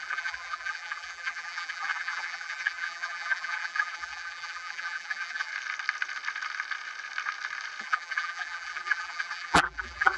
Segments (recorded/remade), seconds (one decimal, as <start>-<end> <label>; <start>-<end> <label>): 0.0-5.5 remade; 5.5-7.8 recorded; 7.8-10.2 remade